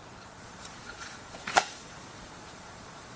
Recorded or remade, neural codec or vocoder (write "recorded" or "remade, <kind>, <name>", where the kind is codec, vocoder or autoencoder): remade, vocoder, Vocos